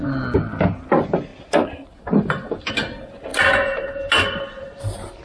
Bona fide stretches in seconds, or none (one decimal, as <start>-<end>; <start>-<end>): 0.0-5.2